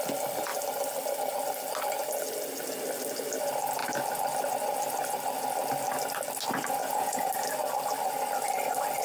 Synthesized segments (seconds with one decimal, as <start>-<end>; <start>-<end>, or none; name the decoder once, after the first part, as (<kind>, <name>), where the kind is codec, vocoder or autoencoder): 6.8-7.3 (vocoder, Vocos)